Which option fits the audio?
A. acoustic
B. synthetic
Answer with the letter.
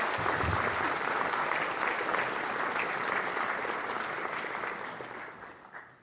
A